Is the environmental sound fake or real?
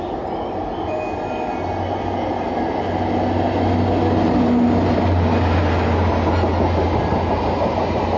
real